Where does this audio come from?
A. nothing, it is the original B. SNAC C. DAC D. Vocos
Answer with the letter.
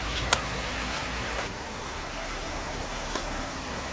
B